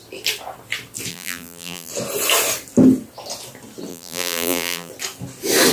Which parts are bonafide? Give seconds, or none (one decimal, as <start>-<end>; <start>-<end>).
0.0-1.1; 1.9-3.9; 4.9-5.7